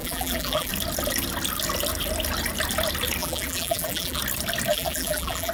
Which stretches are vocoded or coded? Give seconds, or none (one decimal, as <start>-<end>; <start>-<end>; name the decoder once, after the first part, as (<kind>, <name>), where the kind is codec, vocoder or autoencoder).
0.0-0.7 (vocoder, BigVGAN v2); 3.2-4.2; 4.7-5.5